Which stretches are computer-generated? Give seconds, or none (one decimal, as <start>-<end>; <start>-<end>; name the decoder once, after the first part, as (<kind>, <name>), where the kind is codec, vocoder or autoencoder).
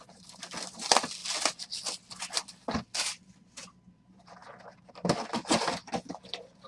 none